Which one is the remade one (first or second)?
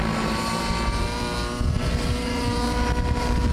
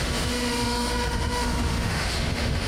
second